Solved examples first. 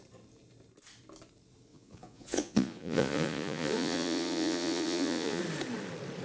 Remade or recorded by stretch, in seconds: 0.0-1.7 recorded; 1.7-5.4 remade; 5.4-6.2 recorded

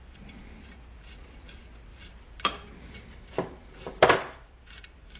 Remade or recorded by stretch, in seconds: 0.0-1.9 recorded; 1.9-5.2 remade

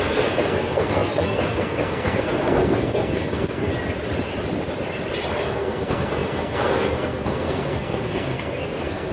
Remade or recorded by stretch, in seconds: 0.0-3.7 remade; 3.7-5.4 recorded; 5.4-9.1 remade

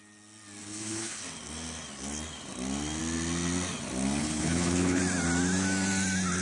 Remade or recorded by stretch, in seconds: 0.0-0.6 recorded; 0.6-1.2 remade; 1.2-4.2 recorded; 4.2-5.0 remade; 5.0-6.4 recorded

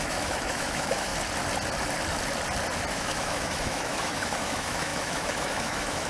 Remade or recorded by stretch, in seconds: 0.0-1.1 remade; 1.1-2.9 recorded; 2.9-6.1 remade

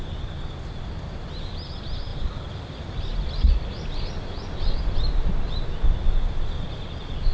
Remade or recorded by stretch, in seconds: 0.0-2.1 recorded; 2.1-3.5 remade; 3.5-7.3 recorded

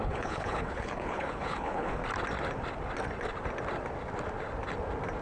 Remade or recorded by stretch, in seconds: 0.0-2.0 remade; 2.0-5.2 recorded

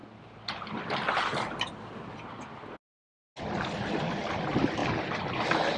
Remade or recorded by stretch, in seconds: 0.0-5.8 recorded